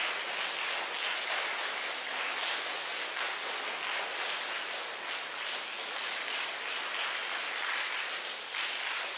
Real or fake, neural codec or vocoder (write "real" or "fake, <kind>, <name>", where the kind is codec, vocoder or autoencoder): real